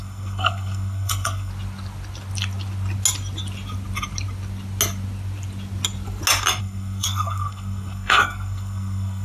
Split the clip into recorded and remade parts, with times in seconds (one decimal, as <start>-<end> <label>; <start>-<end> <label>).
0.0-1.5 remade; 1.5-6.6 recorded; 6.6-9.2 remade

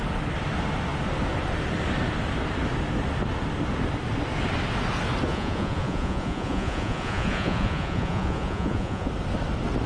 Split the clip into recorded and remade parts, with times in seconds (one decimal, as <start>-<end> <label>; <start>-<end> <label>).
0.0-5.3 recorded; 5.3-9.1 remade; 9.1-9.9 recorded

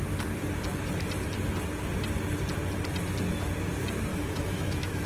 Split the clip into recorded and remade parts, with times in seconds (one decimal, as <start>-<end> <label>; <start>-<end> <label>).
0.0-4.1 recorded; 4.1-5.1 remade

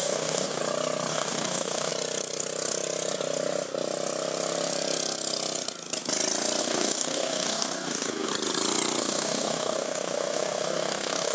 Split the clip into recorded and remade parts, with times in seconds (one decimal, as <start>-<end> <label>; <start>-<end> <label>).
0.0-0.6 remade; 0.6-1.1 recorded; 1.1-1.9 remade; 1.9-6.6 recorded; 6.6-8.3 remade; 8.3-9.0 recorded; 9.0-11.3 remade

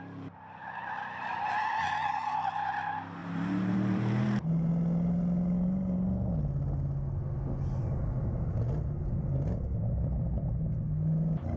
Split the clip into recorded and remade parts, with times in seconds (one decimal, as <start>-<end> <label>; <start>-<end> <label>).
0.0-3.2 recorded; 3.2-4.7 remade; 4.7-11.6 recorded

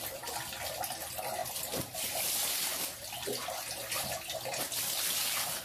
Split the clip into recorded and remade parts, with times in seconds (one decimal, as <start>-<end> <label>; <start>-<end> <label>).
0.0-5.6 recorded

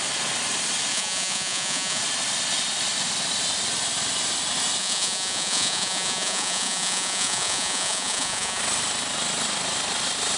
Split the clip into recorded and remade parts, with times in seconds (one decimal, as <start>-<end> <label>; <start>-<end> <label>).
0.0-0.9 recorded; 0.9-2.0 remade; 2.0-4.8 recorded; 4.8-8.6 remade; 8.6-10.4 recorded